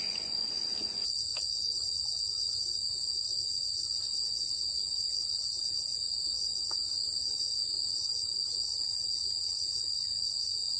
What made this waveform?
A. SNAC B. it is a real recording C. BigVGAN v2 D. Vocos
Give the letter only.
D